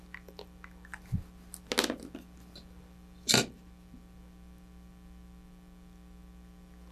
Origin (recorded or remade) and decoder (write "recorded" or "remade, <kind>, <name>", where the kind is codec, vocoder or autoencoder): recorded